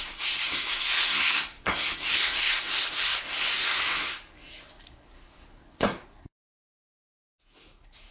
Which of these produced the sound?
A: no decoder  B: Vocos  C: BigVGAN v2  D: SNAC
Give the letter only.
D